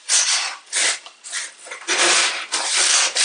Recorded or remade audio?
remade